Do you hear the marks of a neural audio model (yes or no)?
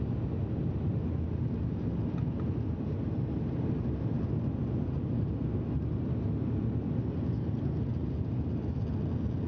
no